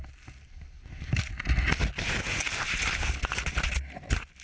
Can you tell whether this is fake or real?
real